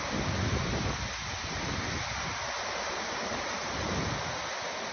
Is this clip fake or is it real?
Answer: real